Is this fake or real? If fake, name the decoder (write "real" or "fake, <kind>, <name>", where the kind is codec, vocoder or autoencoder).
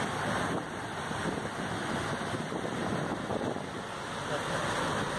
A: fake, vocoder, BigVGAN v2